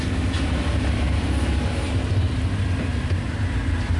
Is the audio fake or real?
real